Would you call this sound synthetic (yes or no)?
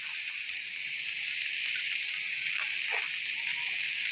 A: no